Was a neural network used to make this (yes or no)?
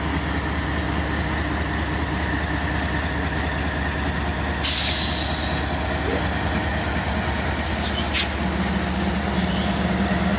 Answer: no